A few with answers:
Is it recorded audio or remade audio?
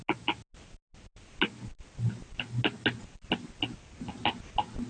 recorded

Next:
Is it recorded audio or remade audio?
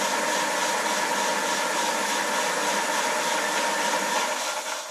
recorded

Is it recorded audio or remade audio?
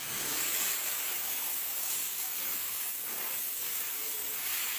remade